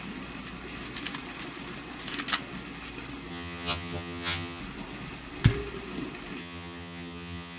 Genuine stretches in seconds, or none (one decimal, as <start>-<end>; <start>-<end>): 0.0-3.3; 4.6-6.4